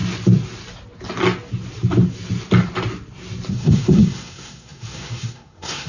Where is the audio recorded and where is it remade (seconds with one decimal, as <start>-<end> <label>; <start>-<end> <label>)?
0.0-3.5 recorded; 3.5-5.9 remade